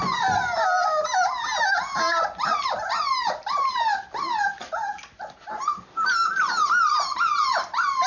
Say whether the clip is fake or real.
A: real